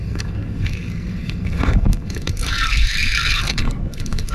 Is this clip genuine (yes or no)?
no